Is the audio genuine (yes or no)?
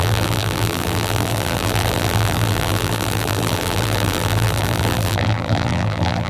no